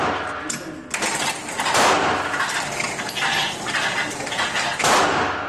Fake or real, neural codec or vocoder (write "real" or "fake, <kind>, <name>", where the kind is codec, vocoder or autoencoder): real